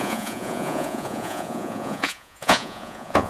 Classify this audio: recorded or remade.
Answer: remade